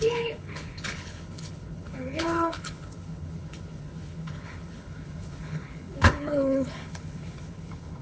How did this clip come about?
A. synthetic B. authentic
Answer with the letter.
A